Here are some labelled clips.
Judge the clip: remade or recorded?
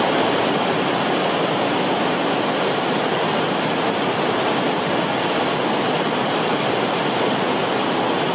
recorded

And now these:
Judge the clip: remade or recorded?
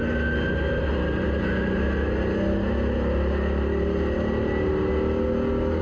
recorded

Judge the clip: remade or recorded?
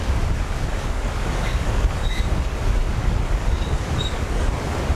remade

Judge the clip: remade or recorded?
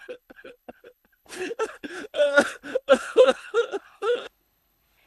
remade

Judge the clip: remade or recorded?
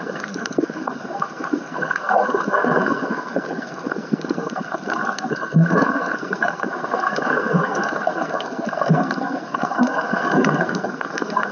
remade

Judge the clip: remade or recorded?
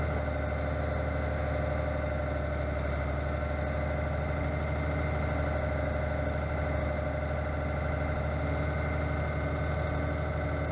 recorded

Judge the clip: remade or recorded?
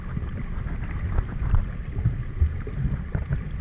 recorded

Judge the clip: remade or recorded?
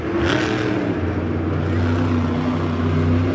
recorded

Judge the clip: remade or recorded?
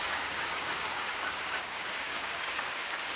remade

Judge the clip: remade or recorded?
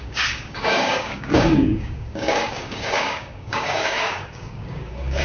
remade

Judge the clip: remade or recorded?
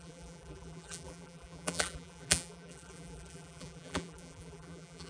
remade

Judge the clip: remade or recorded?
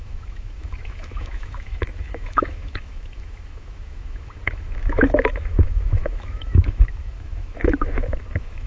remade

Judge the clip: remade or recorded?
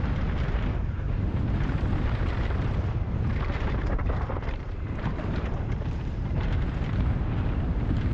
remade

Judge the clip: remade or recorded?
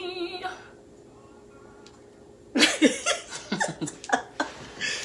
recorded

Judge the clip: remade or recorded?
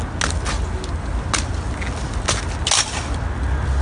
recorded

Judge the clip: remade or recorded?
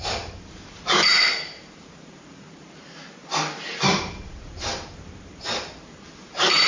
remade